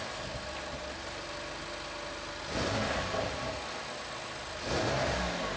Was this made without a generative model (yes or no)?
yes